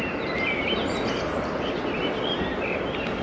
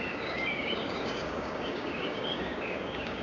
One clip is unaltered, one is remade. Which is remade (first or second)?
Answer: second